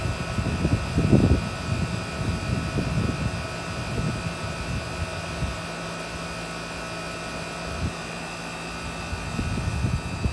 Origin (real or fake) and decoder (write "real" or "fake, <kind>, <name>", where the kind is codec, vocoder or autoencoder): real